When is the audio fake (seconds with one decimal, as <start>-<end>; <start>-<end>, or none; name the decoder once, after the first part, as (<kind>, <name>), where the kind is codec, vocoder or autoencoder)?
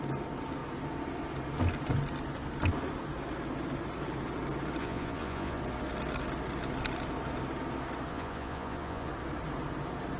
4.8-5.6 (vocoder, Vocos); 8.1-9.1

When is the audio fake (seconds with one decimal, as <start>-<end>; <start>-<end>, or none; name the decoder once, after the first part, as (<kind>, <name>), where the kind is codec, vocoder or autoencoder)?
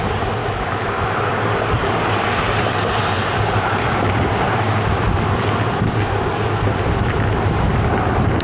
0.4-1.3 (autoencoder, DAC-VAE)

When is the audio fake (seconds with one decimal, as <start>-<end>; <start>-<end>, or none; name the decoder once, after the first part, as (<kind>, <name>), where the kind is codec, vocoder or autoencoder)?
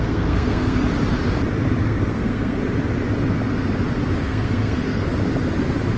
0.0-0.9 (codec, SNAC); 1.8-2.6; 4.2-5.0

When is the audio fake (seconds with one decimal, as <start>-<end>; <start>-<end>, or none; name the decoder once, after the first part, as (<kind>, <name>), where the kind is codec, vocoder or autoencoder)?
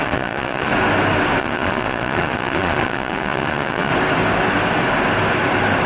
0.0-0.7 (vocoder, Vocos); 1.4-3.9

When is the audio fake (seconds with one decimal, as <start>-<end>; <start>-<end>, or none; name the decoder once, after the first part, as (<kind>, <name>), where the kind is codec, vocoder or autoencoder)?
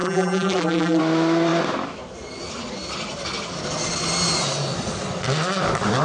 0.0-1.0 (vocoder, BigVGAN v2)